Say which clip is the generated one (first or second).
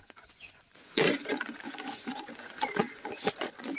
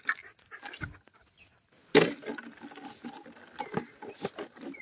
first